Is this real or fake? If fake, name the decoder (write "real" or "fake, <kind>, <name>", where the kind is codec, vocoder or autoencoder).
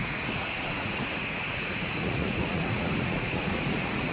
fake, vocoder, Vocos